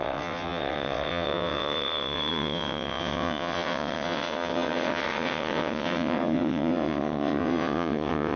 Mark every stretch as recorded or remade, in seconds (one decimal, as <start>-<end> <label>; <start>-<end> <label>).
0.0-8.4 remade